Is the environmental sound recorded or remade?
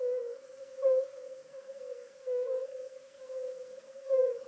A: remade